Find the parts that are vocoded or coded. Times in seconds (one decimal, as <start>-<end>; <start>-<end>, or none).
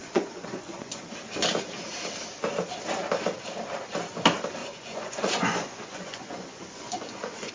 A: 0.0-1.0; 4.6-7.5